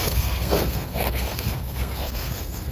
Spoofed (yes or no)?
yes